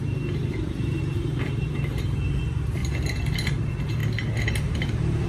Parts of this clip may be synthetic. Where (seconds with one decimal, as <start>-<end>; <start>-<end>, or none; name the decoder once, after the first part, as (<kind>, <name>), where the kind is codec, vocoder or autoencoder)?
0.0-2.8 (vocoder, BigVGAN v2); 3.6-4.0; 4.6-5.3